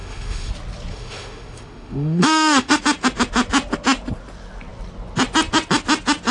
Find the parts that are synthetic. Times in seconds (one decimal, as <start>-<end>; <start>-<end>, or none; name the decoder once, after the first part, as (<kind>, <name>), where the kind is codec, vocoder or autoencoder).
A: 0.0-0.5 (autoencoder, DAC-VAE); 0.9-2.8